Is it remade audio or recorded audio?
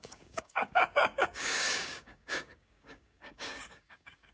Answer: remade